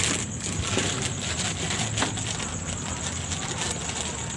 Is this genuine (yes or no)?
yes